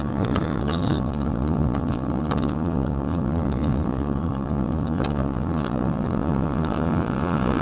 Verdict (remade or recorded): remade